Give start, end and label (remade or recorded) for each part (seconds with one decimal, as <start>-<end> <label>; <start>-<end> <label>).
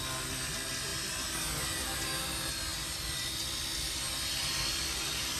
0.0-5.4 recorded